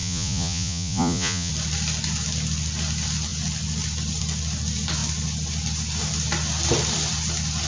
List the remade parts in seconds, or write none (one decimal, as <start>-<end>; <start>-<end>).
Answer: 0.0-1.5